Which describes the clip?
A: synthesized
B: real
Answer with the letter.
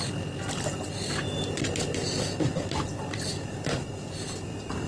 B